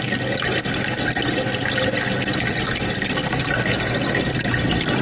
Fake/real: real